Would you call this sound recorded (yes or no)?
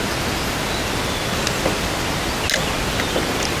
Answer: yes